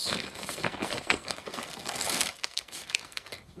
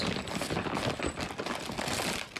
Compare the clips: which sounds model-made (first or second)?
first